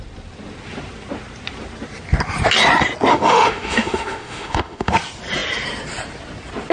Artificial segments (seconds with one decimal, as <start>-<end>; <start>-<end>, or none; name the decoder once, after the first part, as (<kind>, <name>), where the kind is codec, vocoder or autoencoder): 3.1-4.9 (autoencoder, DAC-VAE)